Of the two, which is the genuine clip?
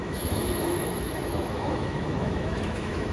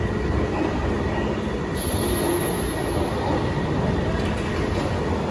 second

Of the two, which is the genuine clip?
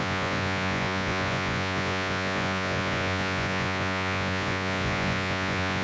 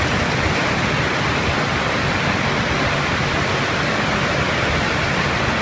second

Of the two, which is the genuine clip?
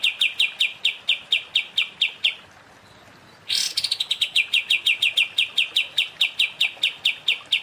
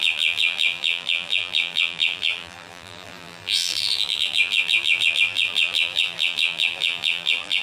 first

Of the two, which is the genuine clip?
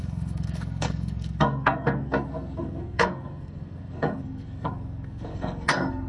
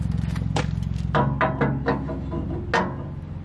second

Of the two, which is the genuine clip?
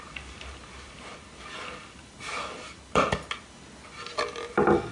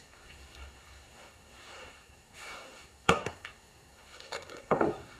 first